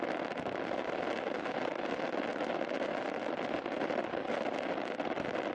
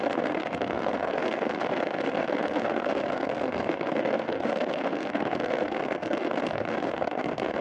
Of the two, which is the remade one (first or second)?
second